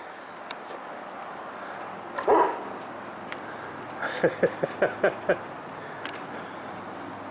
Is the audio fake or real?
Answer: real